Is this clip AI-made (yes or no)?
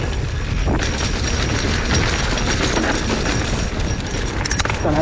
no